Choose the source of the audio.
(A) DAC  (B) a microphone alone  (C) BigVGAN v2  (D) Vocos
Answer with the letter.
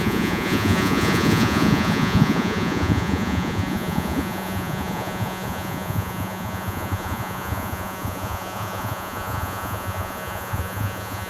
D